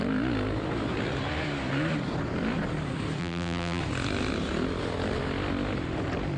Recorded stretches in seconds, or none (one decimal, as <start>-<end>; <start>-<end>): 0.0-3.2; 3.8-6.4

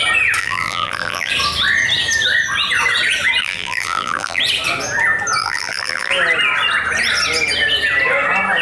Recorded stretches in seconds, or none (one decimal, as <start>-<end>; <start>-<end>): 0.0-0.4; 1.3-3.4; 4.4-5.4; 6.1-8.6

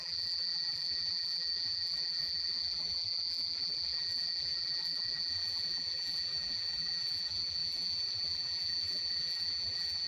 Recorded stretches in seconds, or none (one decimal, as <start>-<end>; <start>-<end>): none